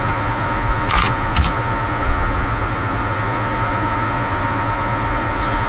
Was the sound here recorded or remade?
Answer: remade